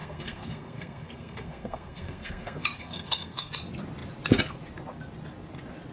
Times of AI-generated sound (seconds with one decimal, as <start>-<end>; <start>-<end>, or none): 0.0-3.5